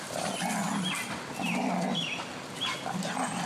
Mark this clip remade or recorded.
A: recorded